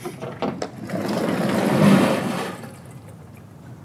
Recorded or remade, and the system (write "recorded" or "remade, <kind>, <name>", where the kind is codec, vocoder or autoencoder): recorded